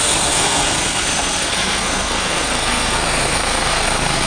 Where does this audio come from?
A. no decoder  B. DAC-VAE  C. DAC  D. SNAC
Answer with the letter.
D